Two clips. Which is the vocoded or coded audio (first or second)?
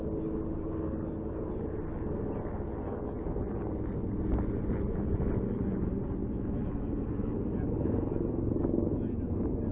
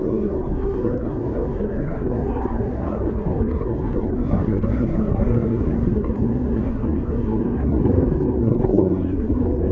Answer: second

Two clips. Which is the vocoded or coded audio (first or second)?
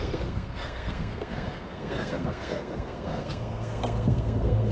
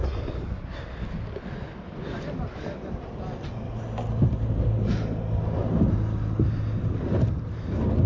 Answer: first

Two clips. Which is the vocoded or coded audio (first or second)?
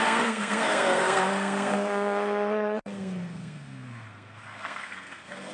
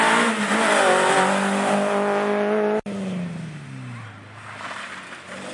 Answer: first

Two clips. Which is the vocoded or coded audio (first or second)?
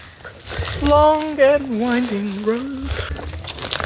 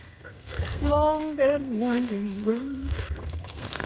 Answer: second